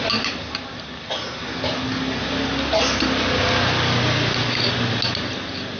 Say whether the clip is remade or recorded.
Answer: recorded